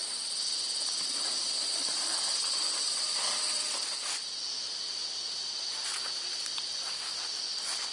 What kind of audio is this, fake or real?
real